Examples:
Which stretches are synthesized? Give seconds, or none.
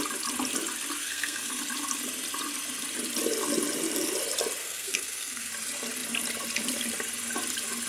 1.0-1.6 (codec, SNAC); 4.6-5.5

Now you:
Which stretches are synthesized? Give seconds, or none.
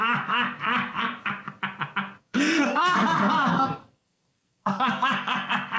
0.0-1.3 (codec, SNAC); 2.2-5.8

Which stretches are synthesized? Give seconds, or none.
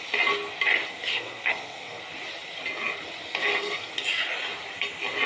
1.1-2.0 (codec, SNAC); 3.4-3.9